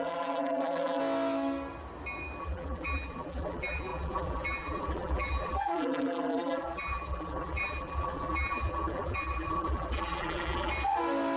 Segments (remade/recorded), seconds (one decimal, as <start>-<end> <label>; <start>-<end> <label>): 0.0-1.0 remade; 1.0-2.4 recorded; 2.4-10.7 remade; 10.7-11.4 recorded